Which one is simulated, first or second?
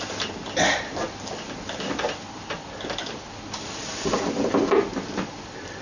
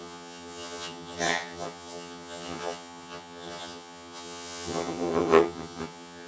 second